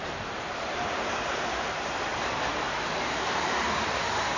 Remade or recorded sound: remade